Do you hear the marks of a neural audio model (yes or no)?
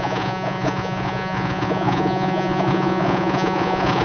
yes